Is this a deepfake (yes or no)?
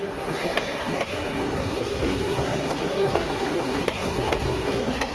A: yes